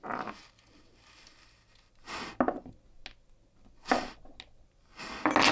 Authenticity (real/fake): real